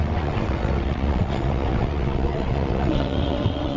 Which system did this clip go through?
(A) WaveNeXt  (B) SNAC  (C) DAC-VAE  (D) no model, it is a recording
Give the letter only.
A